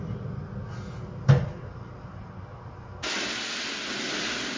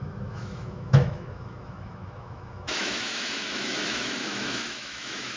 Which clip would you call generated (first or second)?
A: second